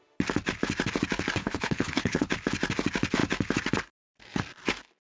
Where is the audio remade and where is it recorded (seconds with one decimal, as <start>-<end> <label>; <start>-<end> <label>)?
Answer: 0.0-1.4 recorded; 1.4-2.3 remade; 2.3-5.0 recorded